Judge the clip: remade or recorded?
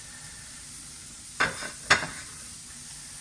recorded